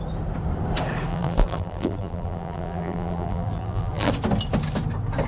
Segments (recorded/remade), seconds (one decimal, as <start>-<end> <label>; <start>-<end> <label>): 0.0-1.1 recorded; 1.1-4.1 remade; 4.1-5.3 recorded